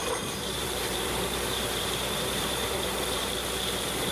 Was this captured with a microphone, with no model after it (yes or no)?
no